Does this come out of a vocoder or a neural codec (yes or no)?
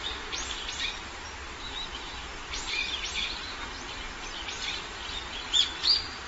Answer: yes